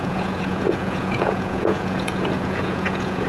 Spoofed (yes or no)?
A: yes